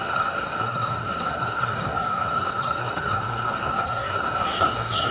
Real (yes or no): no